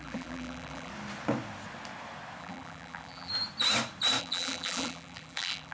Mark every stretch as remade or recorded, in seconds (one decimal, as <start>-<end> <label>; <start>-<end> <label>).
0.0-0.9 remade; 0.9-2.4 recorded; 2.4-3.3 remade; 3.3-4.2 recorded; 4.2-5.7 remade